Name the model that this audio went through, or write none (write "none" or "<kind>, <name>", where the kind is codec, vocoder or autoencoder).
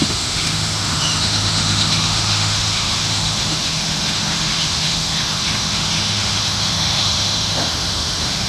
autoencoder, DAC-VAE